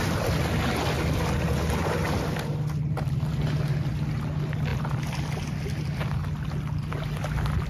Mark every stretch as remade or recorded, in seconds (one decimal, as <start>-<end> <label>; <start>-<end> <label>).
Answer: 0.0-7.7 recorded